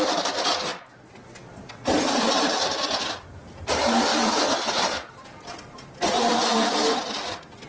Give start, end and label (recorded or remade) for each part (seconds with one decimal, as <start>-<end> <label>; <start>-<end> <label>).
0.0-4.1 recorded; 4.1-5.1 remade; 5.1-7.7 recorded